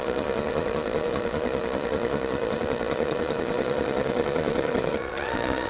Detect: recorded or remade remade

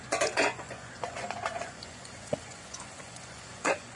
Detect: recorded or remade remade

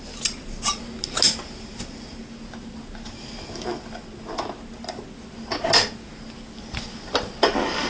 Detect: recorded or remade recorded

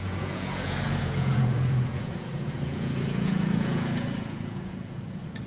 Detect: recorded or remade remade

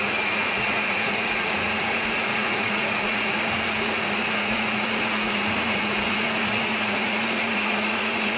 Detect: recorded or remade remade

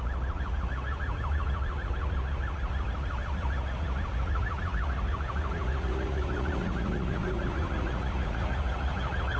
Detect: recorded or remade remade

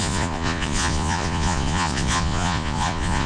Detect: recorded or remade remade